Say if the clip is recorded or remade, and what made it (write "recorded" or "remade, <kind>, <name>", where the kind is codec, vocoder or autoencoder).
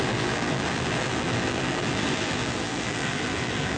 remade, vocoder, BigVGAN v2